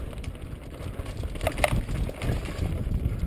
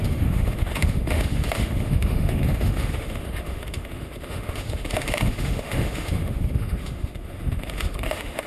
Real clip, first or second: first